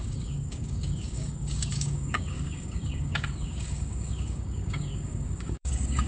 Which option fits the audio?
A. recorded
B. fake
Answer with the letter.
B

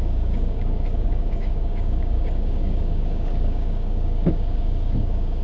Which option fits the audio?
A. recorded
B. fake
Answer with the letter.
B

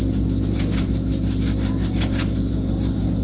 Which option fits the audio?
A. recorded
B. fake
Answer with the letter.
A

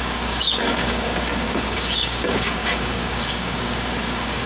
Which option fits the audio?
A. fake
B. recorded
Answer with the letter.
A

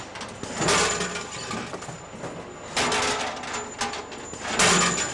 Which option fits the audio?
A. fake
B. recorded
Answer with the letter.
B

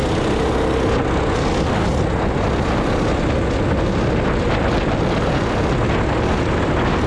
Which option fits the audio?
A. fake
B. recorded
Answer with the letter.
B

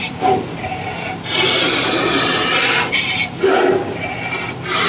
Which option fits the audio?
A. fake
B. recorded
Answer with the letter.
B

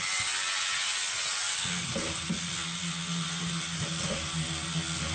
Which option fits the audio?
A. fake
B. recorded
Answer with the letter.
B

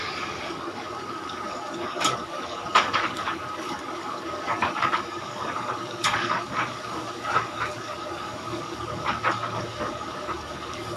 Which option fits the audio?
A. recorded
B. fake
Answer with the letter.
B